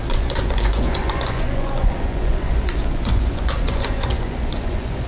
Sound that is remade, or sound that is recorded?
remade